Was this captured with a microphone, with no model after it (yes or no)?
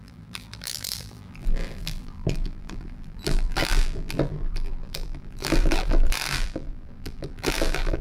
no